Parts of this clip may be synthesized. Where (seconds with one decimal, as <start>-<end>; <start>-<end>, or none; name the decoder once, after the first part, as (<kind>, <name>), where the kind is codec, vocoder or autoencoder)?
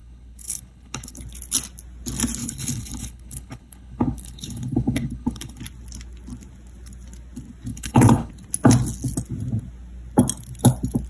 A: 0.0-1.2 (codec, HILCodec); 2.4-5.6; 7.7-8.3